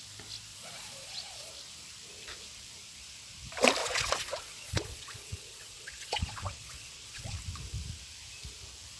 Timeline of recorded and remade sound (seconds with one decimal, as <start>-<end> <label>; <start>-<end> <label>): 0.0-0.5 recorded; 0.5-1.5 remade; 1.5-3.8 recorded; 3.8-7.4 remade; 7.4-9.0 recorded